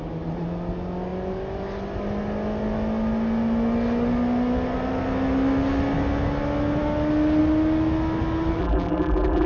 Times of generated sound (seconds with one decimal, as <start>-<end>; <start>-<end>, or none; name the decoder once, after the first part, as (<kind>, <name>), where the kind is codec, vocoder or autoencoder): 8.6-9.5 (vocoder, BigVGAN v2)